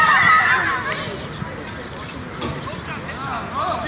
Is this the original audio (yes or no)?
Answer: yes